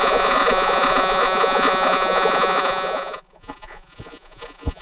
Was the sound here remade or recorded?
remade